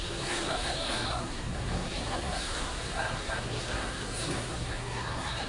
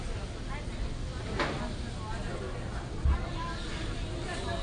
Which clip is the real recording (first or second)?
second